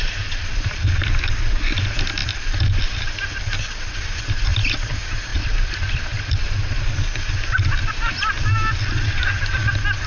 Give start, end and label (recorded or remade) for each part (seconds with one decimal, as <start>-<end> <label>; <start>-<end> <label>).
0.0-10.1 recorded